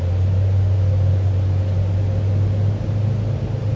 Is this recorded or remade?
recorded